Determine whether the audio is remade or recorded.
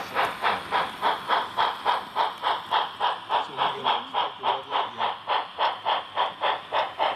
recorded